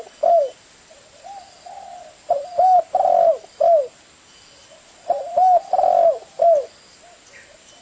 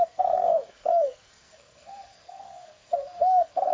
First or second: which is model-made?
second